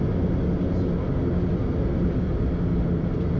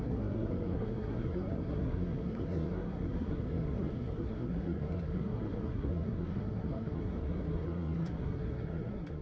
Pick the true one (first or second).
first